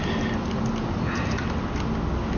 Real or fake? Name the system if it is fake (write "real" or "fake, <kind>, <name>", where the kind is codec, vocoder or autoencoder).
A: real